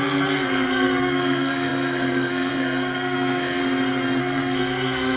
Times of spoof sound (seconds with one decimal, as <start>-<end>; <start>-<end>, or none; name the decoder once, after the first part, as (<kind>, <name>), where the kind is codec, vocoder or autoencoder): 0.0-3.6 (codec, SNAC); 4.2-5.2